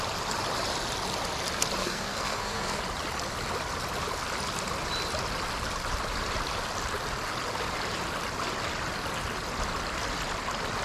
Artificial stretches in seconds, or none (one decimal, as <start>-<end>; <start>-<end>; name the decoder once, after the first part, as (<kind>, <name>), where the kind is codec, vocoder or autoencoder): 1.8-2.8 (codec, SNAC)

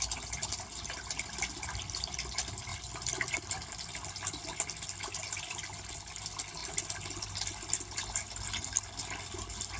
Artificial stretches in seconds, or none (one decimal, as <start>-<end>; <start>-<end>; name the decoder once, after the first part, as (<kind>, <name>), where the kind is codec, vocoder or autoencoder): none

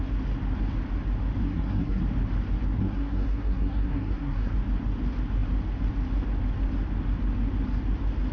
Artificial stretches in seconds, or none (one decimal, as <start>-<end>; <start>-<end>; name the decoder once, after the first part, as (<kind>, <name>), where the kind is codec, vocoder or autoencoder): 1.4-2.0 (codec, SNAC); 2.8-4.5

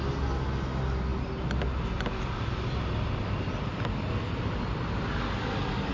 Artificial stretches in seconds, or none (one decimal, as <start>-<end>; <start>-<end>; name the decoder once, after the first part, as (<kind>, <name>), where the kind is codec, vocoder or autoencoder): none